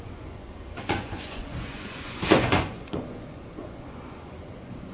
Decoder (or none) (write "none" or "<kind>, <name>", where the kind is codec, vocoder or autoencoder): vocoder, Vocos